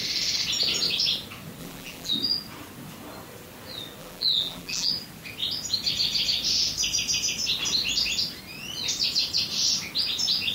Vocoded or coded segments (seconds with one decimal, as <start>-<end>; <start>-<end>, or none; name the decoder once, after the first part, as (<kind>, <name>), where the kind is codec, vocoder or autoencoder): 1.6-2.1 (vocoder, BigVGAN v2); 4.0-4.9